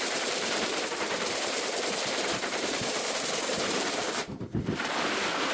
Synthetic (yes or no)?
yes